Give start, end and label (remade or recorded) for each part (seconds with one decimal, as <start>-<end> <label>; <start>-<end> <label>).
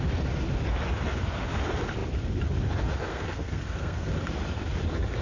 0.0-3.1 recorded; 3.1-4.1 remade; 4.1-5.2 recorded